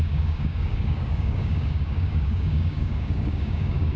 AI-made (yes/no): yes